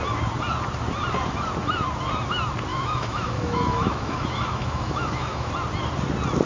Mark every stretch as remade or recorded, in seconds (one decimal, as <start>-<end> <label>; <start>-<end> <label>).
0.0-2.7 recorded; 2.7-5.5 remade; 5.5-6.5 recorded